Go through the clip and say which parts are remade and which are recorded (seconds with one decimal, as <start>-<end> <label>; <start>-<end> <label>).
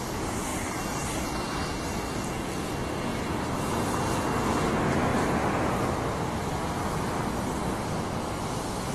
0.0-0.5 recorded; 0.5-2.6 remade; 2.6-5.1 recorded; 5.1-6.4 remade; 6.4-8.9 recorded